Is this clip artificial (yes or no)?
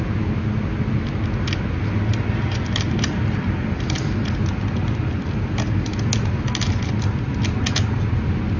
no